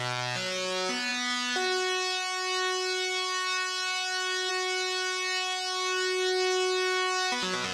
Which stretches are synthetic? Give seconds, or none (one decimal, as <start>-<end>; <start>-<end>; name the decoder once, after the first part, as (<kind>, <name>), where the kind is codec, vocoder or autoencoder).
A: none